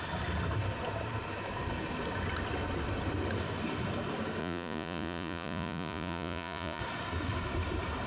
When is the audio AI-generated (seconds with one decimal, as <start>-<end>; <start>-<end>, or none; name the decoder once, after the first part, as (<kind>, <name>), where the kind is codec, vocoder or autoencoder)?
4.4-6.8 (vocoder, Vocos)